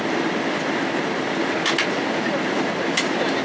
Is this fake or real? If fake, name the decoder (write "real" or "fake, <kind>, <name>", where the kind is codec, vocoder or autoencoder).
real